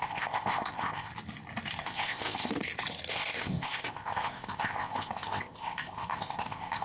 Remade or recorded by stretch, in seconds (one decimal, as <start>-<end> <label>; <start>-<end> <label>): 0.0-1.1 remade; 1.1-1.8 recorded; 1.8-2.5 remade; 2.5-3.1 recorded; 3.1-6.8 remade

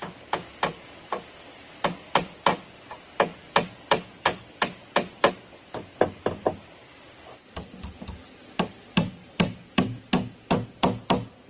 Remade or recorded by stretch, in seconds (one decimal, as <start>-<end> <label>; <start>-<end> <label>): 0.0-9.2 recorded; 9.2-10.1 remade; 10.1-11.5 recorded

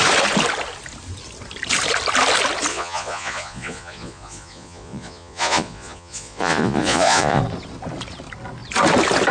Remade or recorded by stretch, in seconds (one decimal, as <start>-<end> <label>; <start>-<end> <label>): 0.0-2.7 recorded; 2.7-7.4 remade; 7.4-9.3 recorded

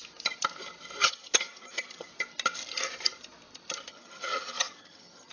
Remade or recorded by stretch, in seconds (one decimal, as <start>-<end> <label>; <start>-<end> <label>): 0.0-1.0 recorded; 1.0-2.1 remade; 2.1-3.9 recorded; 3.9-5.3 remade

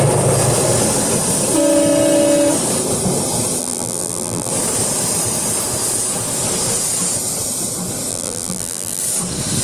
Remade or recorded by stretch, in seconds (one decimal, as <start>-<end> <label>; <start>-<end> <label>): 0.0-3.6 recorded; 3.6-4.5 remade; 4.5-8.1 recorded; 8.1-9.0 remade; 9.0-9.6 recorded